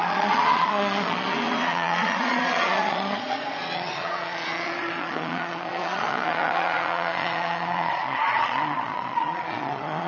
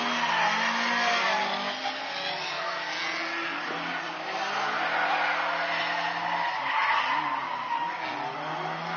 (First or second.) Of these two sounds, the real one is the second